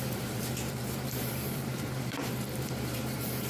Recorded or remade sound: remade